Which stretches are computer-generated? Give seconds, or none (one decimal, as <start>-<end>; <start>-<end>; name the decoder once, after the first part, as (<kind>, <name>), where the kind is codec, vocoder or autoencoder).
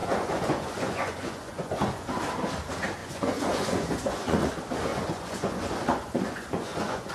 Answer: 0.0-2.2 (vocoder, Vocos); 3.0-4.5; 4.9-7.1